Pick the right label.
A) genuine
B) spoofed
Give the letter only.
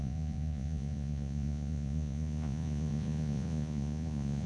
B